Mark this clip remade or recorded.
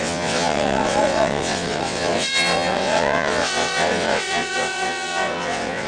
remade